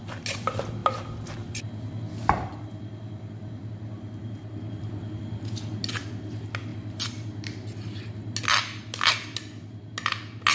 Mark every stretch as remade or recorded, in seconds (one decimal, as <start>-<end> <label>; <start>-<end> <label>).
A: 0.0-10.5 recorded